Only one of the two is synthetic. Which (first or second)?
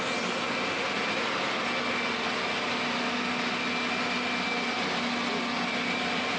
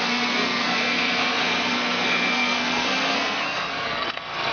second